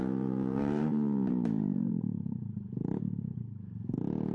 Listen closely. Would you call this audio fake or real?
fake